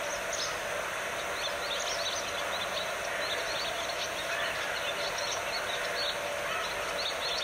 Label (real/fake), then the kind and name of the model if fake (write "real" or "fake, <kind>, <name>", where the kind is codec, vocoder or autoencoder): real